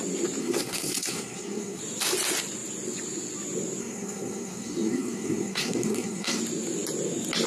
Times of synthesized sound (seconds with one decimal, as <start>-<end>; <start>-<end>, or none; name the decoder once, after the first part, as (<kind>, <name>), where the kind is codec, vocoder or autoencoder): 0.4-1.8 (codec, SNAC); 3.8-6.4